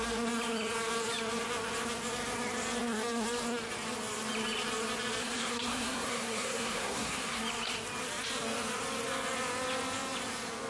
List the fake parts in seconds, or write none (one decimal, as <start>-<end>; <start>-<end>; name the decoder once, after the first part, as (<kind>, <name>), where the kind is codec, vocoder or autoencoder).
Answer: 5.2-7.4 (codec, SNAC)